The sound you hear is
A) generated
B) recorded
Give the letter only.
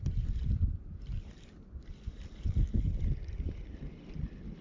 B